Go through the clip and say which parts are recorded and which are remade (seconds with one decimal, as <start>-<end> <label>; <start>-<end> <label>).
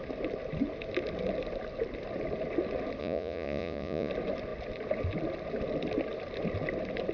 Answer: 0.0-3.0 recorded; 3.0-4.1 remade; 4.1-7.1 recorded